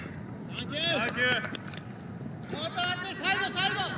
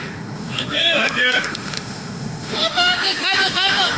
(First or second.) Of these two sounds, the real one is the first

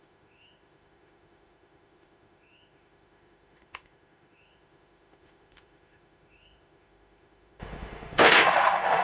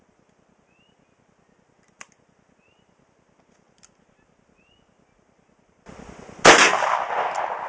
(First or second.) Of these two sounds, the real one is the second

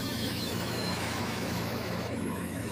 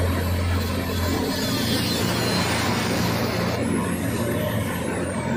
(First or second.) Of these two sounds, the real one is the second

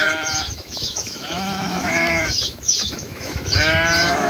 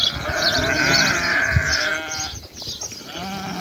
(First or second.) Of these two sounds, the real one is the second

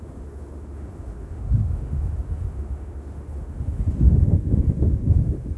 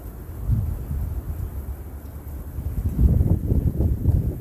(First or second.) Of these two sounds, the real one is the second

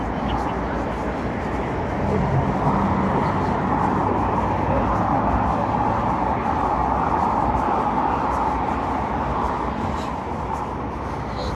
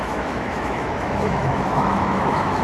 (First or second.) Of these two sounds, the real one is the first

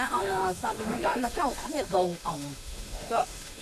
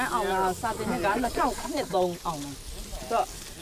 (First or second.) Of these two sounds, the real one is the second